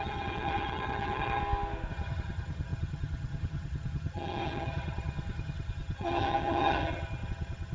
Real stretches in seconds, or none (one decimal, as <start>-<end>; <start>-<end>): 1.4-1.9